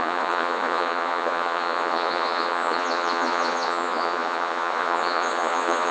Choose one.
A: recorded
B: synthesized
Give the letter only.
B